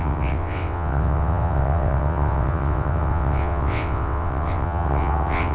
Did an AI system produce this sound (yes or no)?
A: yes